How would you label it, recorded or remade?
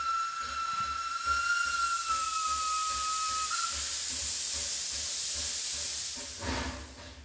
recorded